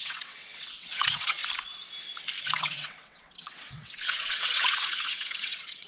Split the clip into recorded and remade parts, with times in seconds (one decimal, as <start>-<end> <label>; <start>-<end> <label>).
0.0-1.4 remade; 1.4-2.4 recorded; 2.4-5.9 remade